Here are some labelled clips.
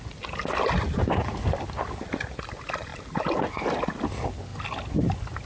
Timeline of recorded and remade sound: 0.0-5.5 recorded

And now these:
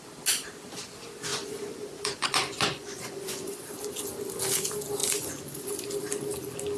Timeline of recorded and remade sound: 0.0-1.3 recorded; 1.3-3.7 remade; 3.7-5.0 recorded; 5.0-5.7 remade; 5.7-6.8 recorded

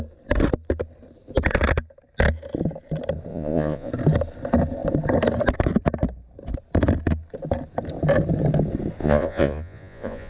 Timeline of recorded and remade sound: 0.0-3.3 recorded; 3.3-3.9 remade; 3.9-9.0 recorded; 9.0-10.3 remade